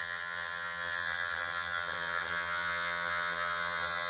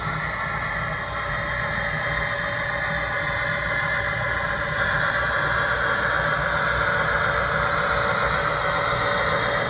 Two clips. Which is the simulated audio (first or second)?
first